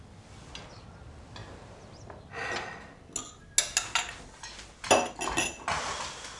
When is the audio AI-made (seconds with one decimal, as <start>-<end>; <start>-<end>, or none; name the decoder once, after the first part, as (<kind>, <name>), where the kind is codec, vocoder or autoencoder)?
none